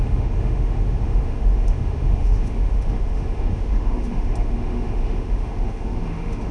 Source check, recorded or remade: remade